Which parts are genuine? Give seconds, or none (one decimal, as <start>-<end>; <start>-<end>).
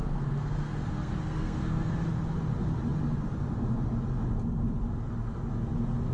1.9-6.1